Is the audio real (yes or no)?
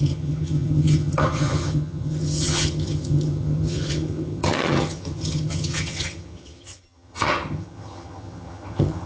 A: no